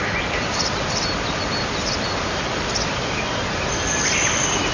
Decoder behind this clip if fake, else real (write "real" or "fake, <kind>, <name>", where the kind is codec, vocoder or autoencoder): real